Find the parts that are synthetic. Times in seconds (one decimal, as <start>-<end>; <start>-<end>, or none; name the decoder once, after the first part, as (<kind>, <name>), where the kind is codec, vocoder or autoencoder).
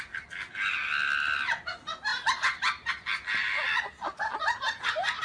none